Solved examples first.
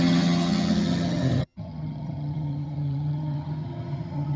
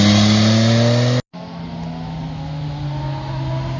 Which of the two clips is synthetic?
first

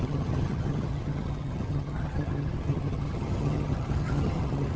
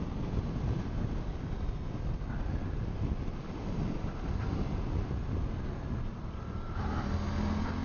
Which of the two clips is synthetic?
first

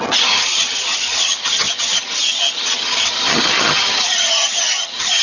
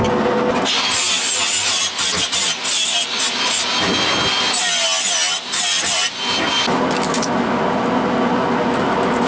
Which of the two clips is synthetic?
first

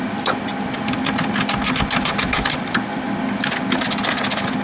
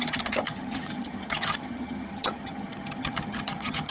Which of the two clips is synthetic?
second